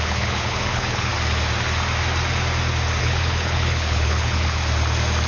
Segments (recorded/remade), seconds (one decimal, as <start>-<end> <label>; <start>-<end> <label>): 0.0-1.1 remade; 1.1-3.0 recorded; 3.0-4.6 remade; 4.6-5.3 recorded